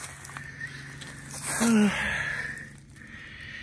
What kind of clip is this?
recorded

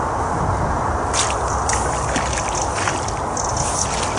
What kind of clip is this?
recorded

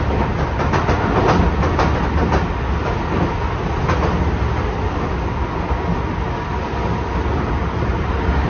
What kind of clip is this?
recorded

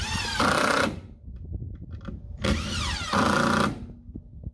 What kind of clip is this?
recorded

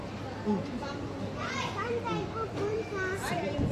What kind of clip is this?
recorded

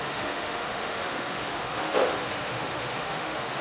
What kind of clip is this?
remade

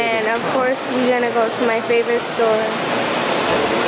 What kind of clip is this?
recorded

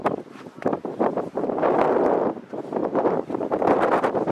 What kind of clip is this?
recorded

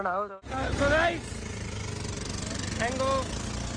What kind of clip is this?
recorded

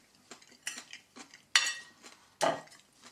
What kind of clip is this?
recorded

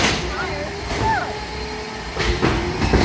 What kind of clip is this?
recorded